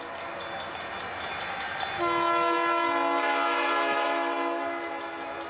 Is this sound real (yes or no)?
yes